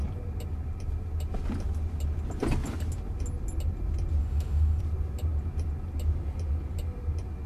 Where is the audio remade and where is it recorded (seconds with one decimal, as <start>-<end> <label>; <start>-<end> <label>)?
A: 0.0-4.2 recorded; 4.2-4.8 remade; 4.8-7.5 recorded